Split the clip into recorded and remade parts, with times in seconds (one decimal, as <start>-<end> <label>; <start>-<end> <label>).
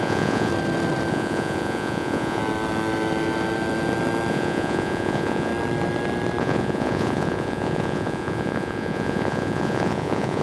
0.0-0.5 remade; 0.5-1.1 recorded; 1.1-2.4 remade; 2.4-4.3 recorded; 4.3-5.5 remade; 5.5-6.4 recorded; 6.4-10.4 remade